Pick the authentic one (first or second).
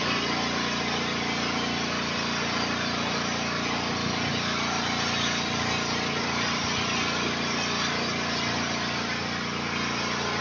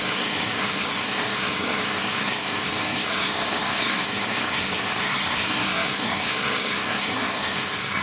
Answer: first